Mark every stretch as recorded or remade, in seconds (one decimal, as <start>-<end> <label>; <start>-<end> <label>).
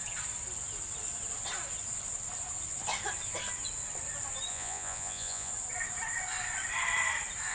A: 0.0-4.5 recorded; 4.5-5.5 remade; 5.5-7.5 recorded